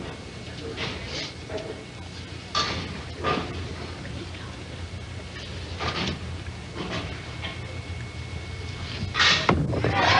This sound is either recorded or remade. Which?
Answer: recorded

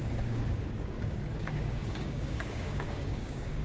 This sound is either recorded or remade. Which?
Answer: remade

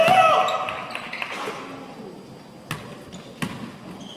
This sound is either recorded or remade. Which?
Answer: recorded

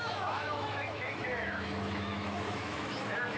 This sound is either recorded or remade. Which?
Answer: remade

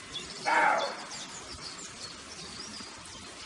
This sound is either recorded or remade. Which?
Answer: recorded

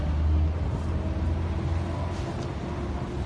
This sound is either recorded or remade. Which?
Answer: recorded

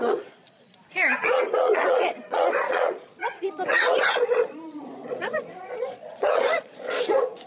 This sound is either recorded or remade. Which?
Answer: remade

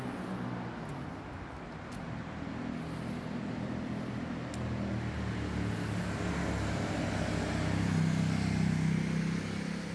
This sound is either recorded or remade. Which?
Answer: recorded